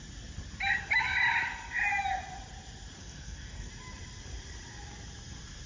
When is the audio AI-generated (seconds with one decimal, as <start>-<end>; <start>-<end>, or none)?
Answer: 3.0-3.7

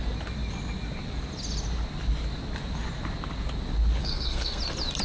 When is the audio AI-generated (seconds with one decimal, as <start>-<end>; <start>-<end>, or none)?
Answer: 4.0-4.6

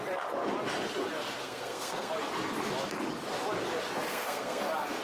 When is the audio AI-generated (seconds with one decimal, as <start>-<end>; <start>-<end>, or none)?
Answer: 1.4-2.1; 4.1-4.6

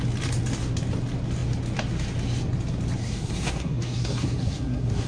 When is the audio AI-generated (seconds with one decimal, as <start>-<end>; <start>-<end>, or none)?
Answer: 3.0-5.1

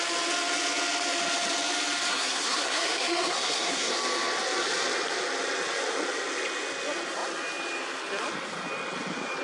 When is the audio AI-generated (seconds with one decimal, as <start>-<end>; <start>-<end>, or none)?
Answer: 2.1-3.9

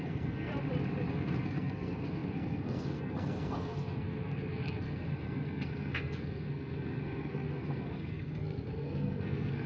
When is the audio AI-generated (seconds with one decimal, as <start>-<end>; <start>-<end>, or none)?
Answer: 0.0-0.5; 1.1-9.7

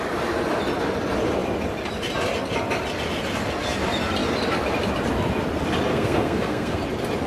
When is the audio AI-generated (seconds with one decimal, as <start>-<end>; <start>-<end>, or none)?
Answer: 5.9-6.8

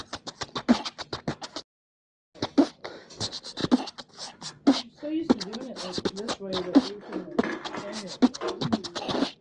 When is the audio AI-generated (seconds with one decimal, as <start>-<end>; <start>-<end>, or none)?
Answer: none